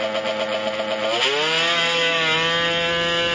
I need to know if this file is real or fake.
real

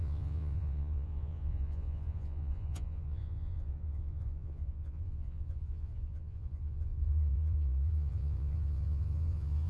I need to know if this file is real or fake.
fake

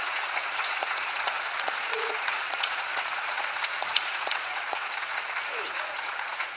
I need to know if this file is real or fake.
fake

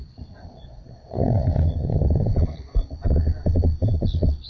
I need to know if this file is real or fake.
fake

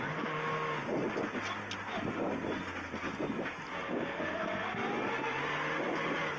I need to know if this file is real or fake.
real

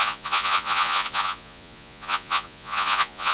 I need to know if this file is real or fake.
fake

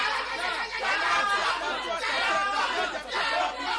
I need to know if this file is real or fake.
real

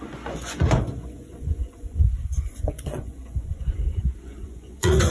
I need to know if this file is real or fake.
fake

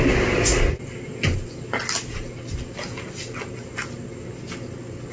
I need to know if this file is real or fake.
real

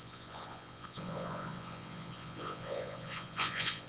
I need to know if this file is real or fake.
fake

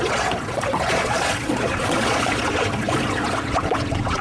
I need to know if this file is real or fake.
fake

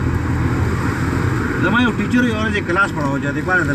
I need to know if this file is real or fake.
real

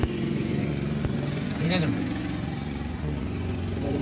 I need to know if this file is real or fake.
fake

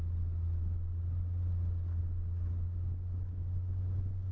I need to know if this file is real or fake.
real